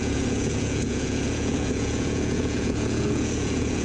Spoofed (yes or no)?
yes